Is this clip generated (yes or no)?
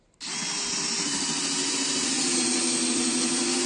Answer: no